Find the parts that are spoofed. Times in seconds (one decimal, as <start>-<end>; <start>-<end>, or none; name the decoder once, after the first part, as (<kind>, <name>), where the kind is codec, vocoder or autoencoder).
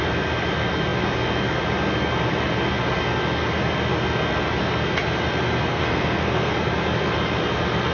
5.7-6.5 (codec, SNAC)